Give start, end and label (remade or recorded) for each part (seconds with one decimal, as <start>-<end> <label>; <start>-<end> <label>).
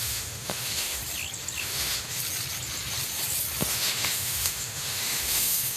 0.0-1.0 remade; 1.0-1.6 recorded; 1.6-2.2 remade; 2.2-3.7 recorded; 3.7-5.8 remade